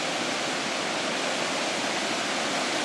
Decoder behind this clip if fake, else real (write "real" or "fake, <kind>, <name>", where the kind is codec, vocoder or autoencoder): real